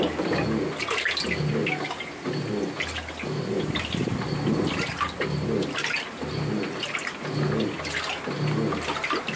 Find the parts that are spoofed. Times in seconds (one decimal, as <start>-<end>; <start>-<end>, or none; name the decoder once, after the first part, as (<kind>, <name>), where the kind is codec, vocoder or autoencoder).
none

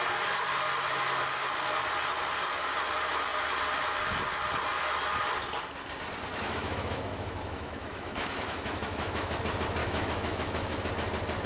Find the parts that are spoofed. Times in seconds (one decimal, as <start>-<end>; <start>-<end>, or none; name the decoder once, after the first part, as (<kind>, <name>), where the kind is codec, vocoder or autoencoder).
6.3-9.4 (autoencoder, DAC-VAE); 9.8-10.9

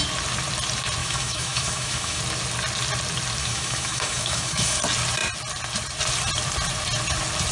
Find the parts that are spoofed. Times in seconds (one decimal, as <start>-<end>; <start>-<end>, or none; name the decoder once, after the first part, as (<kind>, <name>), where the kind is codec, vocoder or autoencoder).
1.0-2.2 (autoencoder, DAC-VAE); 3.4-4.8

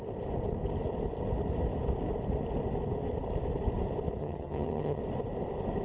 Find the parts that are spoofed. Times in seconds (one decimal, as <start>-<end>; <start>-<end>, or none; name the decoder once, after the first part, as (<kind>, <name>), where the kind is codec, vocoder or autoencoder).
4.2-5.0 (vocoder, HiFi-GAN)

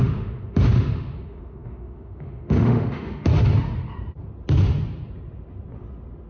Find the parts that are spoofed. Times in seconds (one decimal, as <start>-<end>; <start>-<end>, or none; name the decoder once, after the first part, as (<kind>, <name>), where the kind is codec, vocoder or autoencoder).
0.0-3.3 (autoencoder, DAC-VAE)

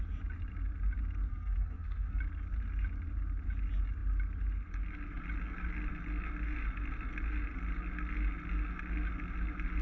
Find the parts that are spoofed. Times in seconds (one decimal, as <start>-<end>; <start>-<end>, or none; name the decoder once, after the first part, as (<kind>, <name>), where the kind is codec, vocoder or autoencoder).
1.3-2.2 (codec, SNAC)

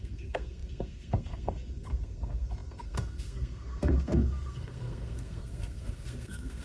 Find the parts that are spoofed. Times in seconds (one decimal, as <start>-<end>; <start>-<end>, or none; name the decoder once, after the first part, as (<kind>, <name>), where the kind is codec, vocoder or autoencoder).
0.0-6.6 (codec, SNAC)

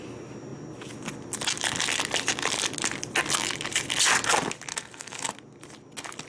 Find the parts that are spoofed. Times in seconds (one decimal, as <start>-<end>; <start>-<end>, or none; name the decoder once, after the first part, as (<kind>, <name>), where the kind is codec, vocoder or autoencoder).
4.7-5.3 (codec, SNAC)